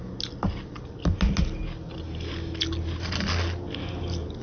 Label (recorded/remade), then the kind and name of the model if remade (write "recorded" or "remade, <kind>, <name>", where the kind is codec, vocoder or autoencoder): recorded